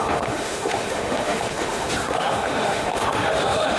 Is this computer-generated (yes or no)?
yes